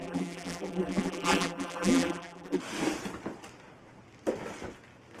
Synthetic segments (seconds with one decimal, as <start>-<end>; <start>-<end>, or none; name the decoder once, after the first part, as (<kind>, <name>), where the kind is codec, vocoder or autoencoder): 0.0-2.6 (vocoder, BigVGAN v2)